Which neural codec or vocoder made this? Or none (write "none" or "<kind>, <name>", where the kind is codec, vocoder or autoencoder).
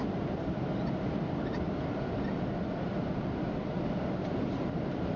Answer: vocoder, BigVGAN v2